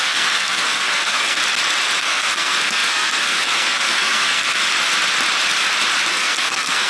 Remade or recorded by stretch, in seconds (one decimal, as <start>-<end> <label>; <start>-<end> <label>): 0.0-1.4 remade; 1.4-2.0 recorded; 2.0-4.6 remade; 4.6-6.1 recorded; 6.1-6.9 remade